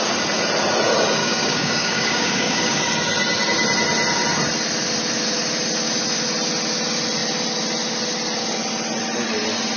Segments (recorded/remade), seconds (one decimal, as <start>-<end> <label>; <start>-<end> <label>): 0.0-1.2 recorded; 1.2-2.8 remade; 2.8-9.8 recorded